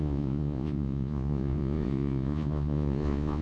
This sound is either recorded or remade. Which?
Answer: remade